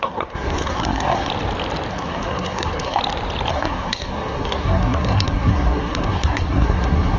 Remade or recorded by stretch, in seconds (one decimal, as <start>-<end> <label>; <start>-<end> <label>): 0.0-1.3 remade; 1.3-1.9 recorded; 1.9-3.0 remade; 3.0-3.5 recorded; 3.5-7.2 remade